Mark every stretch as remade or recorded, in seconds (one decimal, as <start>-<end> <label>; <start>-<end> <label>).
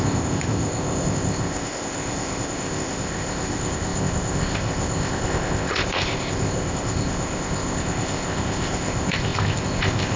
0.0-10.2 remade